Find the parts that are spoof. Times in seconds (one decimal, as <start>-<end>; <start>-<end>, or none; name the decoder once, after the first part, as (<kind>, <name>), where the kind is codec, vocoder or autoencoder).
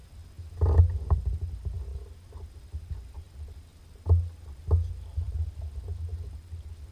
none